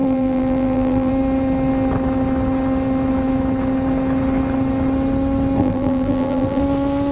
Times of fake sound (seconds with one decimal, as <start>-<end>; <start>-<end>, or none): 0.0-1.1; 5.6-6.6